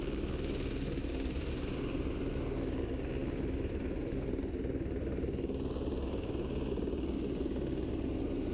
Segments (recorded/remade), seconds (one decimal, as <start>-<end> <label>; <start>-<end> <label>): 0.0-1.0 recorded; 1.0-2.3 remade; 2.3-3.2 recorded; 3.2-4.4 remade; 4.4-8.5 recorded